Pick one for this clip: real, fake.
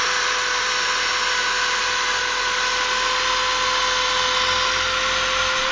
real